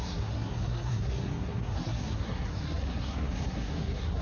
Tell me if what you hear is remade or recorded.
remade